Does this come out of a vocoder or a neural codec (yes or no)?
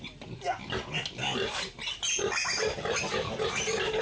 no